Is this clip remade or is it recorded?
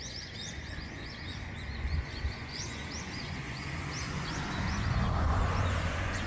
remade